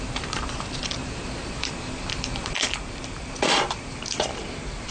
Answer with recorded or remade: remade